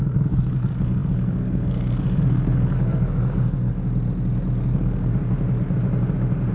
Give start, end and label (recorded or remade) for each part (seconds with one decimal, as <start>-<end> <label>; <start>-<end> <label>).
0.0-3.7 remade; 3.7-4.6 recorded; 4.6-5.1 remade; 5.1-6.5 recorded